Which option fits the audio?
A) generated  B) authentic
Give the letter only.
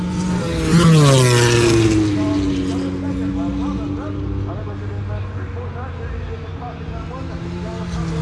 B